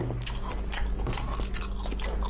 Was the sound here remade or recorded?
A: recorded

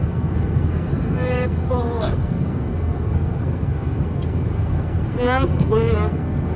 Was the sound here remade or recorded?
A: remade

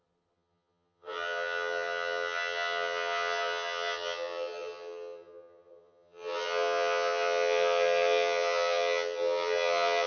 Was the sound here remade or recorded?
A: remade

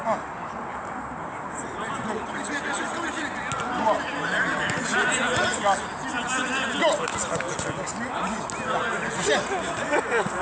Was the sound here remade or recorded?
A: recorded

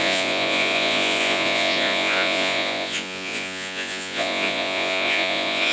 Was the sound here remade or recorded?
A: remade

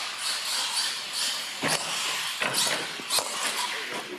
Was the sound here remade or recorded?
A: recorded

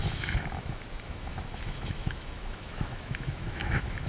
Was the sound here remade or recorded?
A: remade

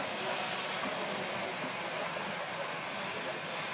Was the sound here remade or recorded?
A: recorded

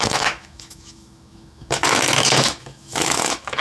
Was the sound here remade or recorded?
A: remade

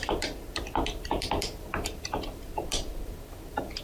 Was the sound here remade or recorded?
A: remade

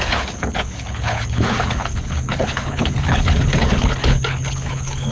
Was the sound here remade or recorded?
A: remade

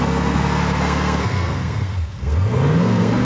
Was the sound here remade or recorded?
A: remade